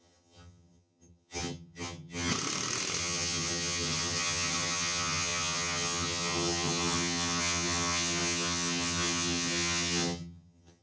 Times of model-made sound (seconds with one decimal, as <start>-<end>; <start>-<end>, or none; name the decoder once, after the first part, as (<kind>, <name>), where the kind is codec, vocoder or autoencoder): 0.0-2.3 (vocoder, HiFi-GAN); 3.0-10.8